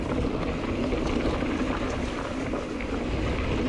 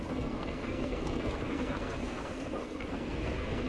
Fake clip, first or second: second